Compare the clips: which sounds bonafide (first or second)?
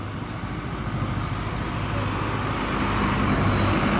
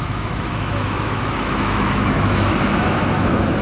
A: first